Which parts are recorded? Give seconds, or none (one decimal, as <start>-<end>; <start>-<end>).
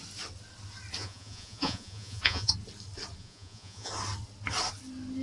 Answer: 0.0-1.0; 2.5-3.2; 3.9-5.2